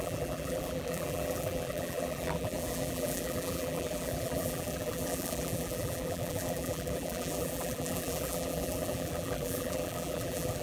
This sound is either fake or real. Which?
fake